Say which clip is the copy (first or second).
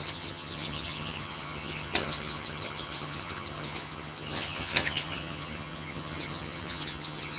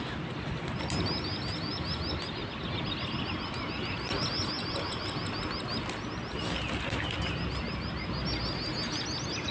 first